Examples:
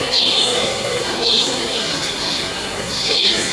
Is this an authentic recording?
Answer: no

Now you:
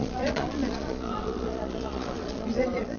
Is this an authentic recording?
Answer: no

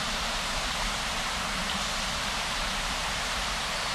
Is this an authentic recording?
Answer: no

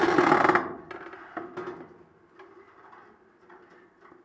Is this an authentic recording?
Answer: yes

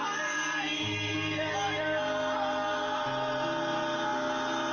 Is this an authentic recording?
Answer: yes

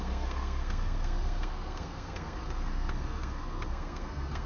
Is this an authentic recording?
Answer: no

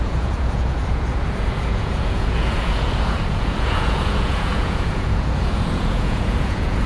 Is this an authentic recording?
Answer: no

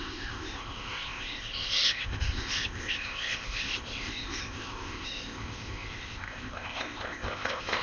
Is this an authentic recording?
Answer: no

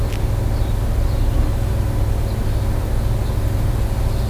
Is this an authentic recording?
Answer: yes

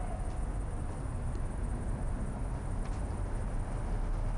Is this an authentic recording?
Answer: yes